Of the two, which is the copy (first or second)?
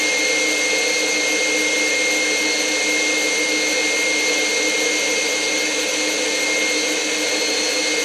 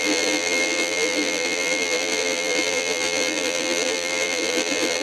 second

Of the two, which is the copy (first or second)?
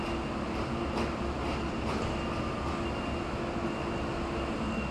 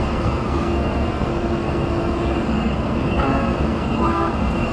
second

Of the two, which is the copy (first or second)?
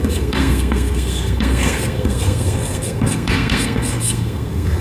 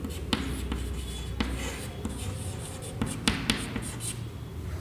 first